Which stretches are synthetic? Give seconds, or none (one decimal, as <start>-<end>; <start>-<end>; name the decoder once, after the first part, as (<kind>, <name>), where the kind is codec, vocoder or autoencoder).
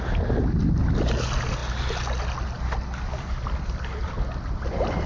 none